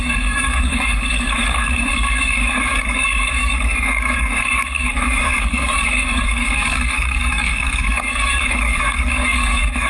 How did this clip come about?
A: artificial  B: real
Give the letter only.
A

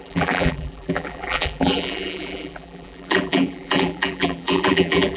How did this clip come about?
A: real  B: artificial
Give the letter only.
B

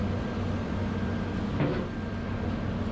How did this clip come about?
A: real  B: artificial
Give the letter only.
A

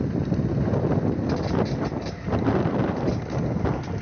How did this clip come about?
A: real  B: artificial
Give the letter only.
A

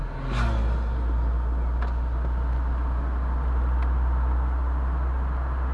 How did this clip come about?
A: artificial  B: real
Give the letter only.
B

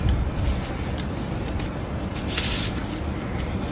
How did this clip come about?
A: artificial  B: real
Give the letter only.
B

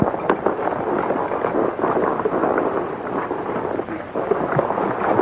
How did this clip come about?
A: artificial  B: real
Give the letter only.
B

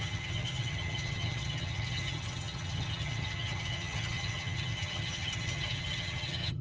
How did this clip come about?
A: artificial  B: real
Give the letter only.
A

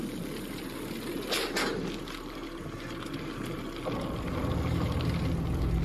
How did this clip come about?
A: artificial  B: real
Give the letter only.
B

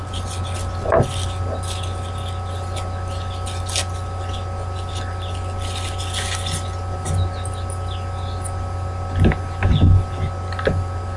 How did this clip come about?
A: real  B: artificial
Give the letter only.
A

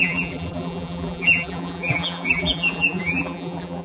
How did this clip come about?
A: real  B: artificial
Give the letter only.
B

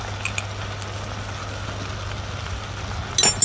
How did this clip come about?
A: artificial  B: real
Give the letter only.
B